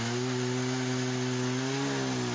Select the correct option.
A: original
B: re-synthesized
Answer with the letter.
A